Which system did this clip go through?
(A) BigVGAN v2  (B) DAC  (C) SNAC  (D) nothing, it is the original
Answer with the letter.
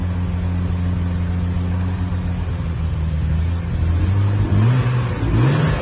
D